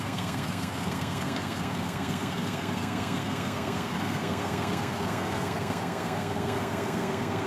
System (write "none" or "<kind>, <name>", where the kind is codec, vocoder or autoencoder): codec, SNAC